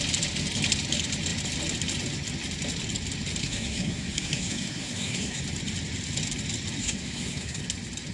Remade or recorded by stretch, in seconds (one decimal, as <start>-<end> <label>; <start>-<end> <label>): 0.0-3.4 recorded; 3.4-5.4 remade; 5.4-6.8 recorded; 6.8-7.6 remade; 7.6-8.1 recorded

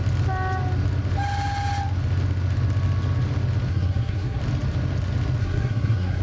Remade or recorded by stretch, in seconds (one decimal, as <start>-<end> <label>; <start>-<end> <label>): 0.0-3.7 recorded; 3.7-4.4 remade; 4.4-5.4 recorded; 5.4-6.2 remade